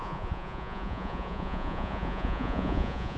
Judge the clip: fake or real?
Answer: fake